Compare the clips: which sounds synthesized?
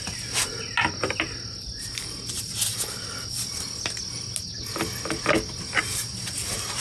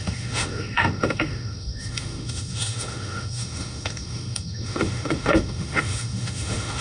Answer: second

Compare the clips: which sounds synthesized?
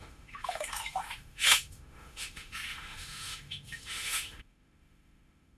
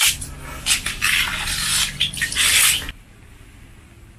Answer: first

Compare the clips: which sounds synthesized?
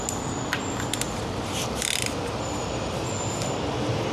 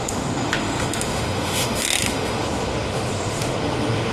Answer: second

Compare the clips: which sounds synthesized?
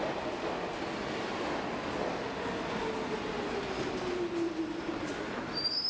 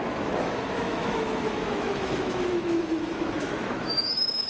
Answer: second